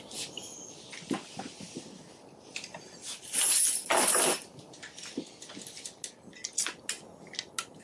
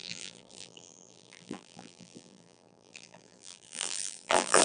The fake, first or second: second